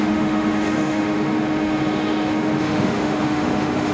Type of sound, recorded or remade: remade